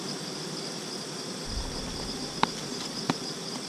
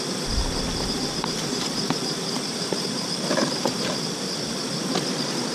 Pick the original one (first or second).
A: first